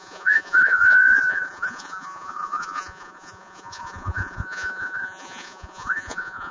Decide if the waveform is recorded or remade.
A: remade